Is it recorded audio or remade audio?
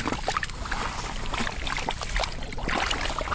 recorded